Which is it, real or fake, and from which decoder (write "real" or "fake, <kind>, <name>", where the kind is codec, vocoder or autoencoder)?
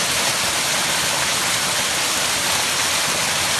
real